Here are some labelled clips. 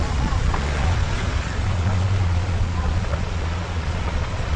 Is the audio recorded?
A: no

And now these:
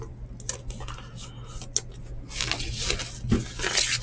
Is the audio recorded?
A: yes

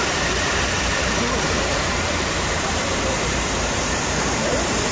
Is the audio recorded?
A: no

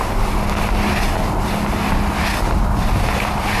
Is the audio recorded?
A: yes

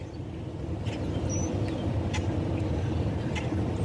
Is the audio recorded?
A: yes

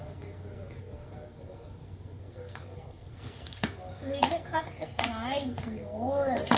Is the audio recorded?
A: no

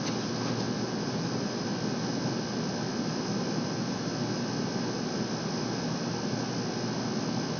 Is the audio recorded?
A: yes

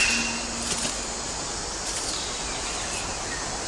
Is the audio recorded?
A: yes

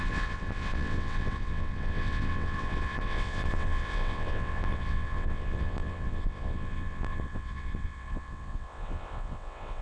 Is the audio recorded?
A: no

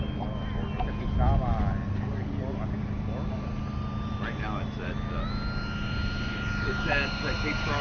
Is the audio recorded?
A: yes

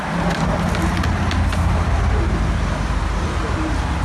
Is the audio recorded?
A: yes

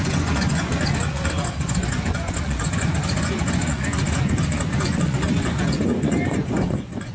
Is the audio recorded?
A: no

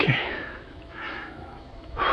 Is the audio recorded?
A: no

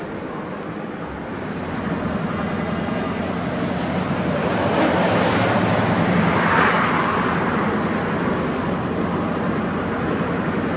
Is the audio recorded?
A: yes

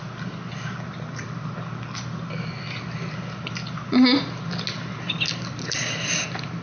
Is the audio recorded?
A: yes